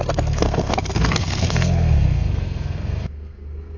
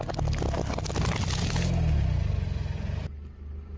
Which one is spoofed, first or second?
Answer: first